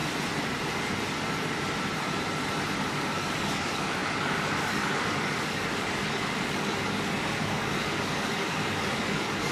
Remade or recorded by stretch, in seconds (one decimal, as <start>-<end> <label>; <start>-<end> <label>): 0.0-2.9 recorded; 2.9-9.5 remade